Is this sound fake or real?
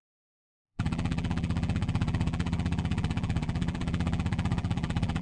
fake